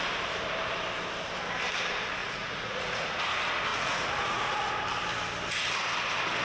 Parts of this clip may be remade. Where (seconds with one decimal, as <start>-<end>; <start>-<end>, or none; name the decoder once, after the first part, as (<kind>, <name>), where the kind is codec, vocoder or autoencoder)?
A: 2.2-3.2 (vocoder, Vocos); 3.7-4.7